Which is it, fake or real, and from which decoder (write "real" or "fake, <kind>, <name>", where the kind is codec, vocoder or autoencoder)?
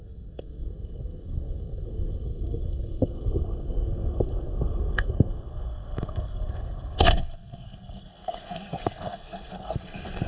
fake, codec, SNAC